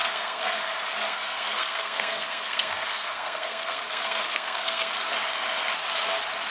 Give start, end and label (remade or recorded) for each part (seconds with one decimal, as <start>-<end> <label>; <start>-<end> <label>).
0.0-0.6 remade; 0.6-1.0 recorded; 1.0-4.9 remade; 4.9-6.5 recorded